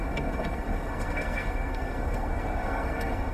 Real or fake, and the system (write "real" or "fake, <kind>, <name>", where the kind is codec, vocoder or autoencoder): fake, codec, SNAC